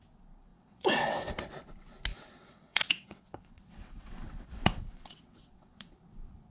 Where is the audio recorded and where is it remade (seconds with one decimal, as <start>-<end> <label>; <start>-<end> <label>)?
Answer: 0.0-0.5 recorded; 0.5-1.3 remade; 1.3-2.1 recorded; 2.1-6.0 remade; 6.0-6.5 recorded